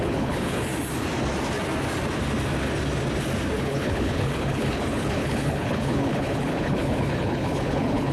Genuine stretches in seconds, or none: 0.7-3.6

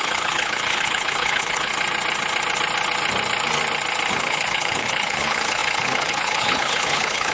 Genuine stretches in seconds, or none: 1.7-4.1

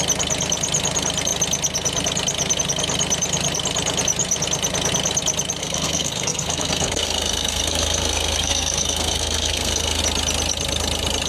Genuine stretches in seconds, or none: 0.0-5.6; 10.0-11.3

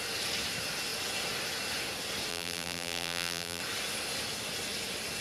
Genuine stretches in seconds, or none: 0.0-2.3; 3.6-5.2

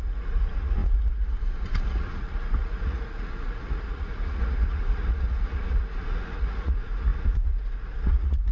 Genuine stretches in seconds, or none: none